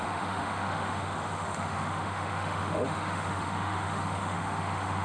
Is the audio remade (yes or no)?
yes